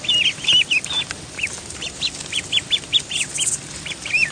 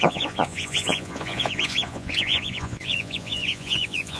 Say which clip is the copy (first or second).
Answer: second